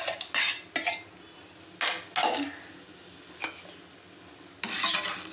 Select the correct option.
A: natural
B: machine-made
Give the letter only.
A